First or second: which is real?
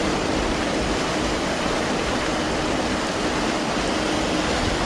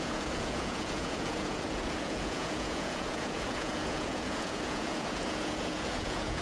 first